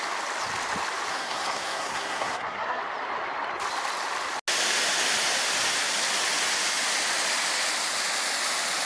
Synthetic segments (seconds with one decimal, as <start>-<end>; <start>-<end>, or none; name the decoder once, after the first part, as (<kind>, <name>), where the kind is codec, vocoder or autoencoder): 1.1-2.8 (codec, SNAC)